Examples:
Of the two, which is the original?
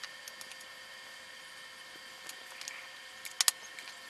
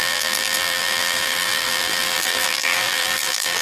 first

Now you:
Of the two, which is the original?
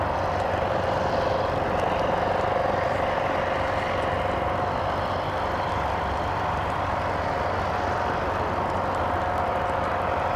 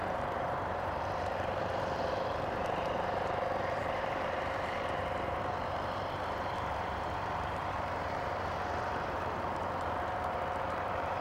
first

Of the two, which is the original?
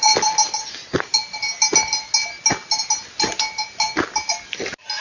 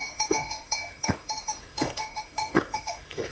first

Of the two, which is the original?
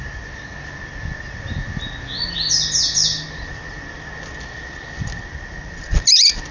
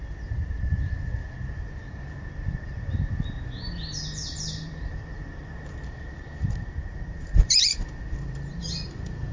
first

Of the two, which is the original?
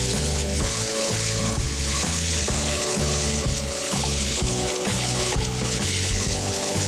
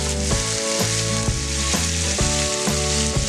second